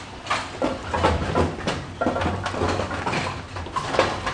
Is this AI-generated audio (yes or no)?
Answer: no